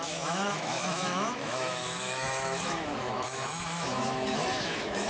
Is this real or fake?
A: fake